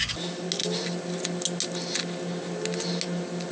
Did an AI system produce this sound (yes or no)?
no